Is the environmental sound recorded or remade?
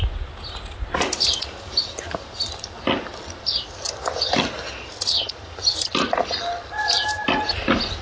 recorded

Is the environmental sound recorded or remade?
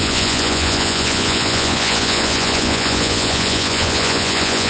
remade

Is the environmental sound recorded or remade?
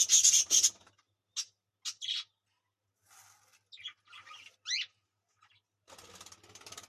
recorded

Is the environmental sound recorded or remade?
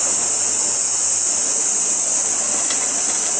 recorded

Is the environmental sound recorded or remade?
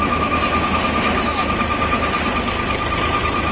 recorded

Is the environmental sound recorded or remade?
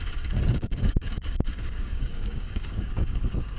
remade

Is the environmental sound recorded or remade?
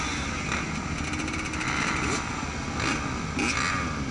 recorded